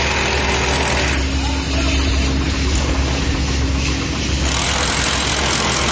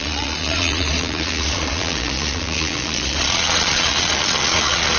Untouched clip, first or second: first